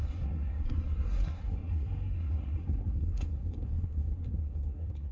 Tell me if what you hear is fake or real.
fake